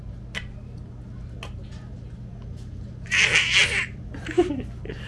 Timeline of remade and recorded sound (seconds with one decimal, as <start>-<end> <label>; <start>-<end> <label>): 0.0-3.6 recorded; 3.6-4.1 remade; 4.1-5.1 recorded